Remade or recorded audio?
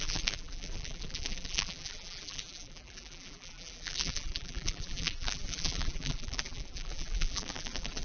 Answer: remade